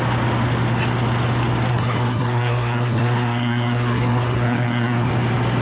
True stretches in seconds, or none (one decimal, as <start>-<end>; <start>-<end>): 0.0-1.7; 5.1-5.6